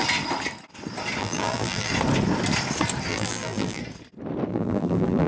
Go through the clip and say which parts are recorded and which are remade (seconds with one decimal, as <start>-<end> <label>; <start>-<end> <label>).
0.0-1.2 recorded; 1.2-1.9 remade; 1.9-3.1 recorded; 3.1-3.8 remade; 3.8-4.5 recorded; 4.5-5.3 remade